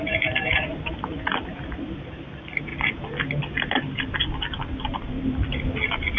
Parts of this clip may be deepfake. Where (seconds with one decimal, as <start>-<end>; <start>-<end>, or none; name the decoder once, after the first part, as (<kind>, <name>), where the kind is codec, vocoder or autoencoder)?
0.0-2.7 (vocoder, BigVGAN v2); 5.1-5.5